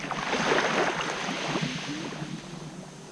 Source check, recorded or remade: recorded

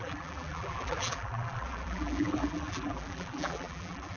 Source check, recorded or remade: remade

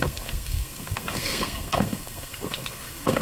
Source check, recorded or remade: remade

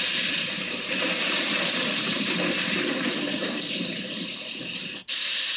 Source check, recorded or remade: remade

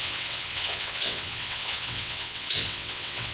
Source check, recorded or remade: remade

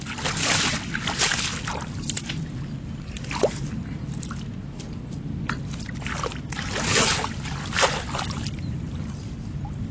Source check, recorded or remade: recorded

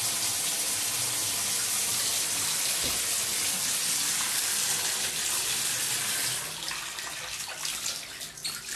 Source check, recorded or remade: recorded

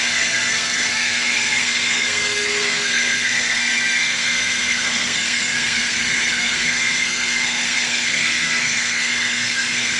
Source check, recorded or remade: remade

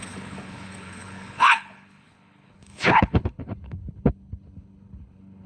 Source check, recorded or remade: remade